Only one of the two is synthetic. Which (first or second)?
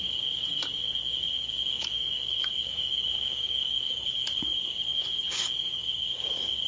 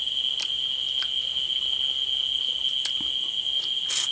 first